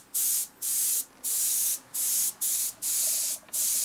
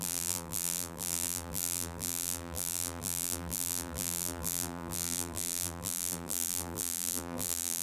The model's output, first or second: second